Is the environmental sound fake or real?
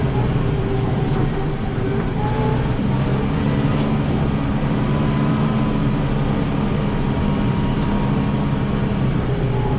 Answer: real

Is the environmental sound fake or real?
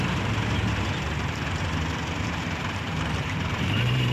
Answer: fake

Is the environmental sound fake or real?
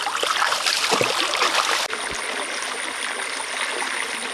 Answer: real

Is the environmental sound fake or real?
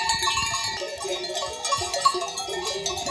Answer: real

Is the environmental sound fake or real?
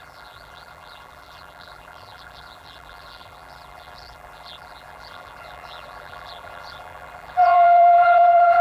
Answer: fake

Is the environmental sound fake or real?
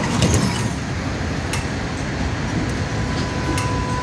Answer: real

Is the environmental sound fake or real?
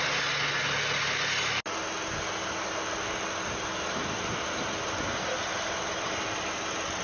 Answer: real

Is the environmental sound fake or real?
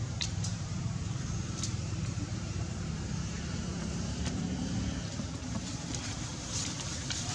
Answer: fake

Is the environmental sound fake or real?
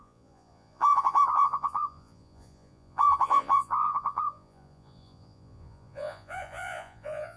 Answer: fake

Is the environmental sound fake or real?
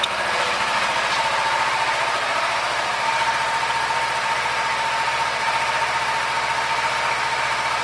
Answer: real